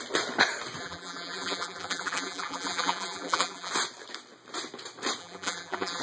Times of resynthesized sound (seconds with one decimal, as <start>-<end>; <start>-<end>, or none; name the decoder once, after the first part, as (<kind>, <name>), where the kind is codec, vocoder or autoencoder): 0.8-3.7 (vocoder, BigVGAN v2); 5.2-6.0